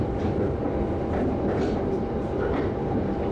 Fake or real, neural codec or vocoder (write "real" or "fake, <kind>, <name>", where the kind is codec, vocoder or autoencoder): real